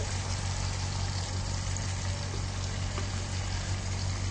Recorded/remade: recorded